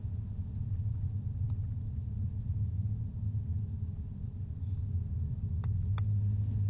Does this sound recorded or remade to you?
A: recorded